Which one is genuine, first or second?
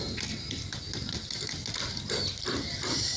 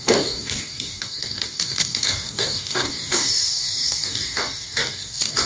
first